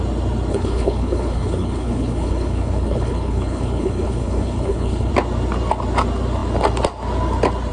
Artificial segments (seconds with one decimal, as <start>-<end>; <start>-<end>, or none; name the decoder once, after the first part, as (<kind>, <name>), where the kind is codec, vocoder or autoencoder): 0.5-5.1 (codec, HILCodec)